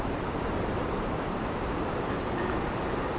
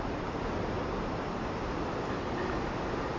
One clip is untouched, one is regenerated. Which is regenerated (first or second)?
first